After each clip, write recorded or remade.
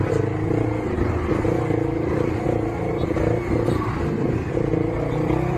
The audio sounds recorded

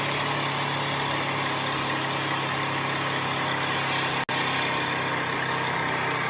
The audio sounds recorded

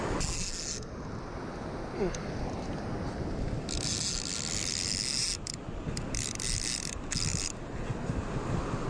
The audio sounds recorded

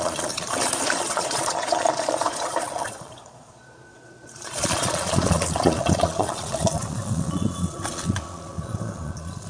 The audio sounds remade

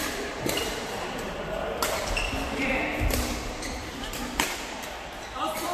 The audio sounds remade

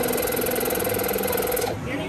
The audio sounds recorded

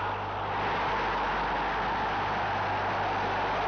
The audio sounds recorded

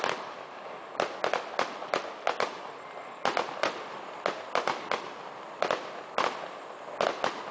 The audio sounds recorded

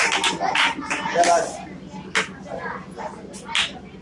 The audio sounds recorded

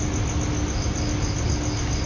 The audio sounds recorded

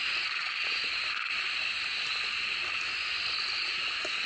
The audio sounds recorded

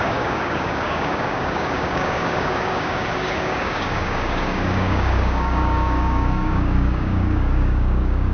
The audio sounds remade